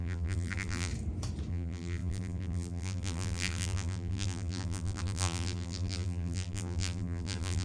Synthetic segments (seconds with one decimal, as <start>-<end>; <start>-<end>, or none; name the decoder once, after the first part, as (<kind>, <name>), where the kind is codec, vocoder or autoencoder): 0.0-0.9 (vocoder, BigVGAN v2); 1.5-7.6